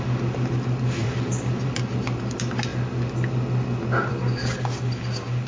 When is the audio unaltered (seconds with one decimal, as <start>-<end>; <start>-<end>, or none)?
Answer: 0.0-1.0; 1.8-5.5

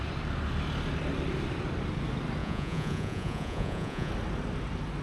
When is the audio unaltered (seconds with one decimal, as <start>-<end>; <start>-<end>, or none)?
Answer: 0.0-2.4; 4.1-5.0

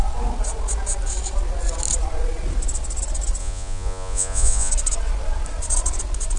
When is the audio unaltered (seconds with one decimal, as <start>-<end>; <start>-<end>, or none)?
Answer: 0.0-3.4; 4.7-6.4

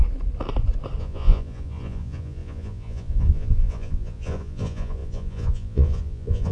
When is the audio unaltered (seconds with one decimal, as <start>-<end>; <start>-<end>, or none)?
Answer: 0.0-1.0